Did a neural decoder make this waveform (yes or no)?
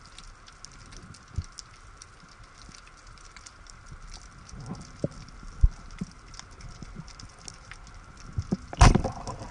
no